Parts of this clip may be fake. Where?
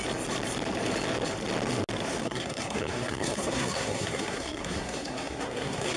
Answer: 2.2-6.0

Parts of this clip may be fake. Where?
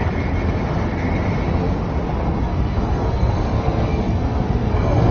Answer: 2.5-5.1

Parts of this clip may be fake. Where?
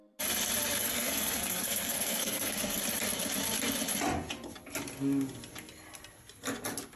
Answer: 0.8-2.8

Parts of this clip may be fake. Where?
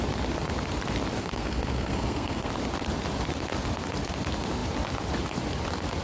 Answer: 1.2-2.5